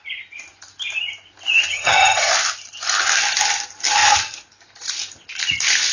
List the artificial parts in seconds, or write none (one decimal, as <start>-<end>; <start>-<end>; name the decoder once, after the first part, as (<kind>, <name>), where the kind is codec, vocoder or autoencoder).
1.7-2.3 (vocoder, HiFi-GAN)